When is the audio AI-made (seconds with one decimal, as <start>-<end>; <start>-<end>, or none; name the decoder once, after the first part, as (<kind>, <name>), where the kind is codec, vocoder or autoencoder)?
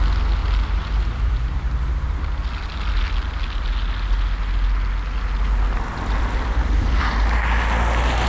0.4-2.1 (vocoder, BigVGAN v2); 5.9-7.1